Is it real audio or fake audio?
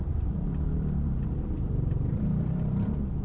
fake